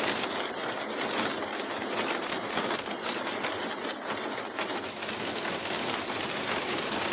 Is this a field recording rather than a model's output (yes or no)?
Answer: yes